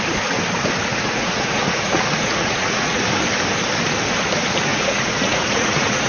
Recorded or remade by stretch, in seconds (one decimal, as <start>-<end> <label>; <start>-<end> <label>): 0.0-0.8 recorded; 0.8-3.0 remade; 3.0-4.7 recorded; 4.7-6.1 remade